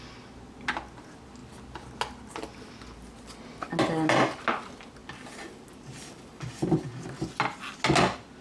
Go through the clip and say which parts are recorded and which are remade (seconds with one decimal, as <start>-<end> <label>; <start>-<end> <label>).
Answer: 0.0-8.4 recorded